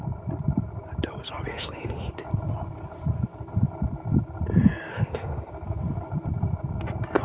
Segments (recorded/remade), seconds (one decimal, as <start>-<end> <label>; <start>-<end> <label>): 0.0-1.5 recorded; 1.5-2.1 remade; 2.1-4.9 recorded; 4.9-5.5 remade; 5.5-7.2 recorded